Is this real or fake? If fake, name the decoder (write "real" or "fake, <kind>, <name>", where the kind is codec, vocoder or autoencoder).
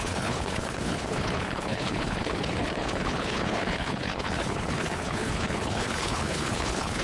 fake, codec, HILCodec